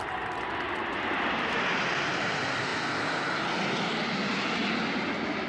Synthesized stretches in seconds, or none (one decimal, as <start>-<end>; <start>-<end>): none